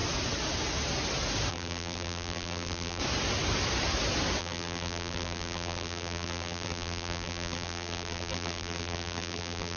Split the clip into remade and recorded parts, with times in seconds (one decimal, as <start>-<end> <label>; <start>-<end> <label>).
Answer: 0.0-1.5 recorded; 1.5-3.0 remade; 3.0-4.4 recorded; 4.4-9.8 remade